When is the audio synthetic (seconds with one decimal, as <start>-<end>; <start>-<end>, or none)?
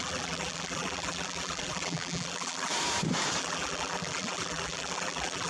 0.0-2.7; 3.4-5.5